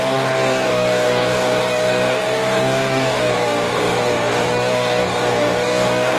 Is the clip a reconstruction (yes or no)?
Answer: yes